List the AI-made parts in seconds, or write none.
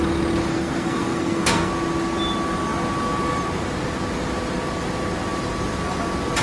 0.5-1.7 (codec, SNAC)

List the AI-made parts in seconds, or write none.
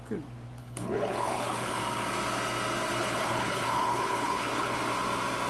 0.6-1.8 (codec, HILCodec); 3.0-4.8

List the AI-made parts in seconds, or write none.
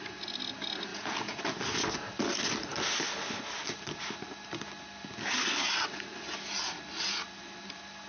0.9-1.4 (vocoder, Vocos)